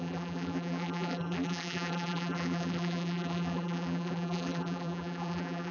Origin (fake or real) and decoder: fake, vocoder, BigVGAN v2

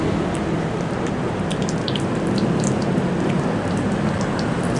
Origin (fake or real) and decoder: real